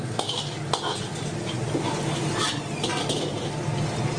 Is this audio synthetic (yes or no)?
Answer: no